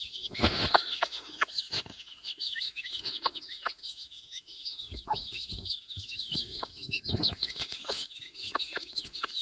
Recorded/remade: remade